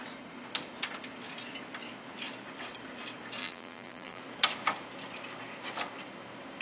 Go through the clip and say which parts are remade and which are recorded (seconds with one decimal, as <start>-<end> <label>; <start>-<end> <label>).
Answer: 0.0-3.4 recorded; 3.4-4.2 remade; 4.2-6.6 recorded